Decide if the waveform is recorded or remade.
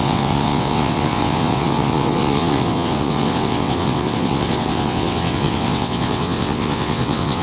remade